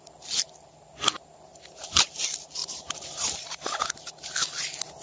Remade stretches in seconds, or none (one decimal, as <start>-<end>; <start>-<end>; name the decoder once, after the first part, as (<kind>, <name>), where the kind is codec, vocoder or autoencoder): 1.5-2.2 (vocoder, BigVGAN v2); 2.6-3.9